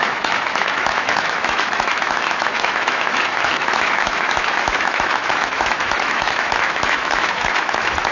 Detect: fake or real fake